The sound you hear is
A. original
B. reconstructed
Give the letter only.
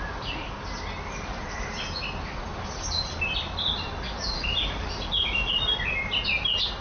A